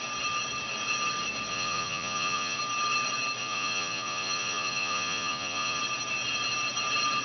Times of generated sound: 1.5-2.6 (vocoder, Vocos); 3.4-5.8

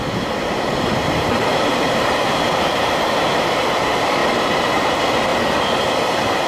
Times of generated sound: 0.0-5.3 (vocoder, BigVGAN v2)